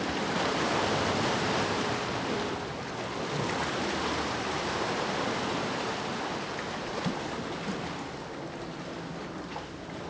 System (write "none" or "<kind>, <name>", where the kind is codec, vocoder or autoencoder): none